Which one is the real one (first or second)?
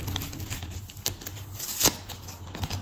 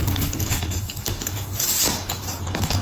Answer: first